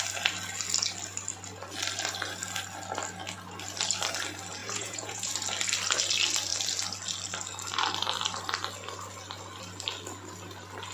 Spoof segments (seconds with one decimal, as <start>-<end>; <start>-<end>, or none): 4.6-5.3